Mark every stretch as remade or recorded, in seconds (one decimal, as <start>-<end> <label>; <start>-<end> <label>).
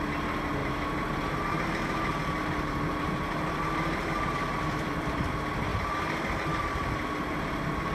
0.0-0.6 recorded; 0.6-5.3 remade; 5.3-7.9 recorded